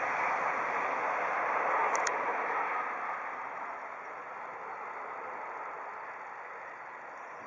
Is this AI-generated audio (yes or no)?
no